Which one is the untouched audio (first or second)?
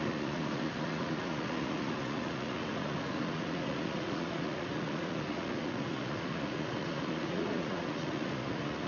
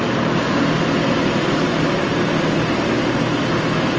second